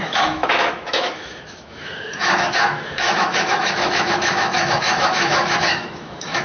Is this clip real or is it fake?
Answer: fake